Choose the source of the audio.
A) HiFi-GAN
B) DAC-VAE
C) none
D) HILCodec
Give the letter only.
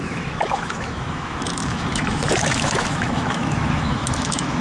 B